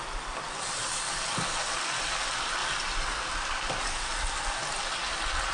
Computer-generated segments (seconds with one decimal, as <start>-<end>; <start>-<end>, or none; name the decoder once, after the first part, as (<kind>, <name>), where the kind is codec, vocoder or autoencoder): none